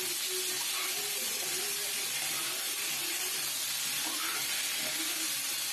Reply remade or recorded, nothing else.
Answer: recorded